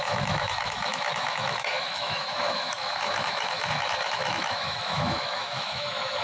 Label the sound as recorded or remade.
remade